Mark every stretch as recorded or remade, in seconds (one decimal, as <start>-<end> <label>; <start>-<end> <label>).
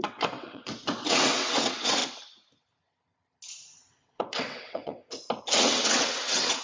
0.0-2.0 remade; 2.0-3.8 recorded; 3.8-5.0 remade; 5.0-5.6 recorded; 5.6-6.6 remade